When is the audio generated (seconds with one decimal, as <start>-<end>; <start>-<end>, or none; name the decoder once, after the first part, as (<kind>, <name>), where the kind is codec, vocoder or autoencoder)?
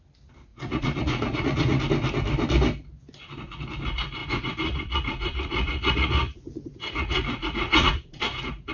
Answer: 0.5-1.8 (vocoder, Vocos); 4.2-8.7